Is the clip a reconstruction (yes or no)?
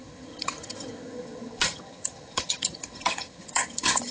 yes